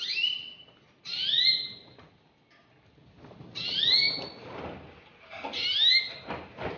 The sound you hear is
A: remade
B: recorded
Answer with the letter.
B